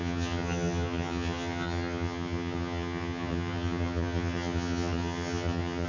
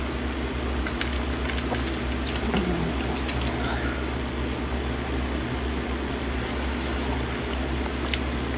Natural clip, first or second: second